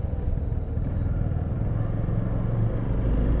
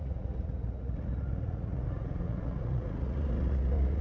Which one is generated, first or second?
second